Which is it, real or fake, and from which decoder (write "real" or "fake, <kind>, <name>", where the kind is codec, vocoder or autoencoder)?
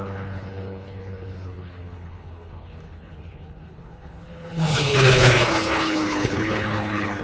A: fake, codec, HILCodec